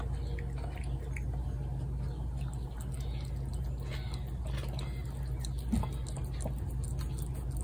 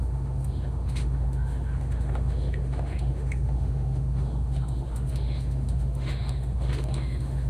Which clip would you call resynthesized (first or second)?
second